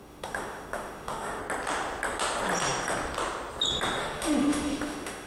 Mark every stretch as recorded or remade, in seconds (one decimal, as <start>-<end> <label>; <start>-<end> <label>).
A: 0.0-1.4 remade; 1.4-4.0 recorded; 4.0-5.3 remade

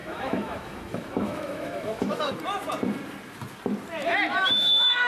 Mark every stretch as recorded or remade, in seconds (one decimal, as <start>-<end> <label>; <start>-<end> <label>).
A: 0.0-2.3 remade; 2.3-4.3 recorded; 4.3-5.1 remade

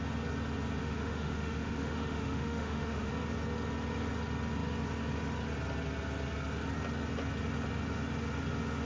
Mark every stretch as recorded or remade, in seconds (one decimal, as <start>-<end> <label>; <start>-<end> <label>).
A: 0.0-0.8 recorded; 0.8-3.1 remade; 3.1-8.9 recorded

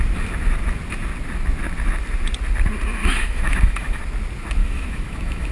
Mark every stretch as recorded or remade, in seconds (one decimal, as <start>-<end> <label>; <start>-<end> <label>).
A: 0.0-3.0 recorded; 3.0-4.0 remade; 4.0-4.6 recorded; 4.6-5.5 remade

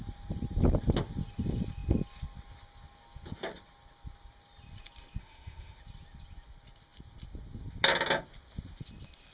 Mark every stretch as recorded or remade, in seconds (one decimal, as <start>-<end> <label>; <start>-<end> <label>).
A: 0.0-5.2 recorded; 5.2-5.8 remade; 5.8-9.3 recorded